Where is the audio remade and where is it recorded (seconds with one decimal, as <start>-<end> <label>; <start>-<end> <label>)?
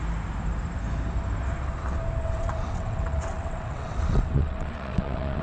0.0-2.2 recorded; 2.2-5.4 remade